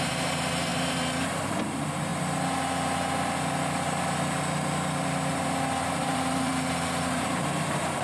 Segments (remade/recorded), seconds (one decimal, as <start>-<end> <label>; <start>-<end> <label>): 0.0-2.1 remade; 2.1-5.8 recorded; 5.8-8.0 remade